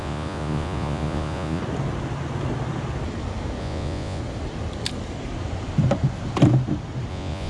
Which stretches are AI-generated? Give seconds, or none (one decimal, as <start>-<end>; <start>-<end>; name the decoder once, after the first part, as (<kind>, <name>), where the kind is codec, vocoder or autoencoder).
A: 0.0-1.6 (vocoder, Vocos); 3.6-4.2; 7.1-7.5